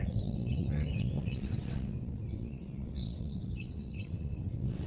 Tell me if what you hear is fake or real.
fake